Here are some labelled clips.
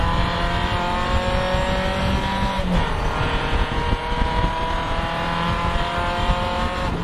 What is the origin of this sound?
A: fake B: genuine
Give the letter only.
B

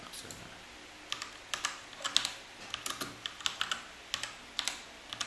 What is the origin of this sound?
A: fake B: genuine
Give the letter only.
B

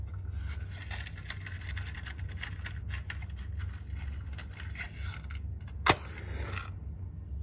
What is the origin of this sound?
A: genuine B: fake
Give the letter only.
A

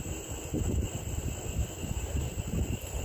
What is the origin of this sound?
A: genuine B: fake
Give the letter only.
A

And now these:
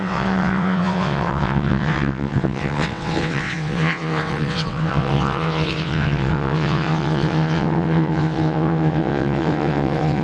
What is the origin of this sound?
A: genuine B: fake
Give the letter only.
B